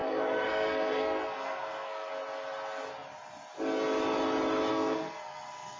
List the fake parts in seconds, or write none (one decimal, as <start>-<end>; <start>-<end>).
0.0-2.1; 4.7-5.8